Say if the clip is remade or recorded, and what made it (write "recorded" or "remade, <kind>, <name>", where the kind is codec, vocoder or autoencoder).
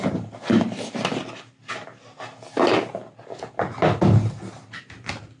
recorded